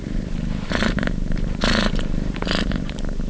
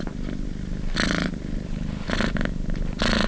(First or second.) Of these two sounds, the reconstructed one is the first